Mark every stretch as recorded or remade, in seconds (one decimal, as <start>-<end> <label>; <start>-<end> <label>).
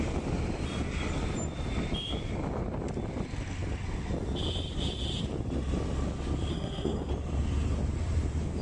0.0-6.5 recorded; 6.5-7.1 remade; 7.1-8.6 recorded